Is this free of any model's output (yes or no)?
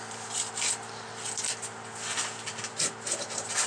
yes